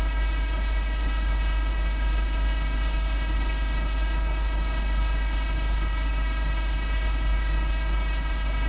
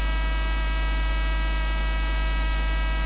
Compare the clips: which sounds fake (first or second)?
first